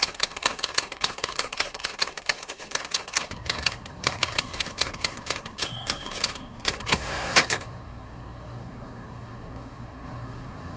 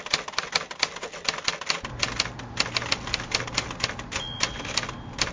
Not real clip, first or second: first